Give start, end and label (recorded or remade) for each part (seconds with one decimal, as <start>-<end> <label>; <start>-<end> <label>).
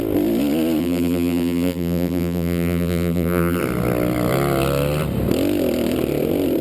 0.0-0.8 recorded; 0.8-3.6 remade; 3.6-6.6 recorded